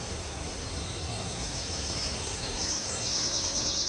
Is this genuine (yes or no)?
no